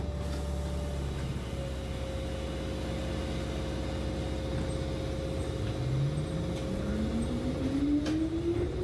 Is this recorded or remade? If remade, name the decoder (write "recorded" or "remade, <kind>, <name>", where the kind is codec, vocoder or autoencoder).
recorded